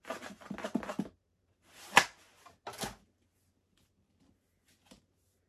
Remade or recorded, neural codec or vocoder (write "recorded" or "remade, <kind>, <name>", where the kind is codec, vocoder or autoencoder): recorded